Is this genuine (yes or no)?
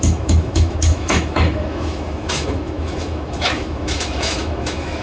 no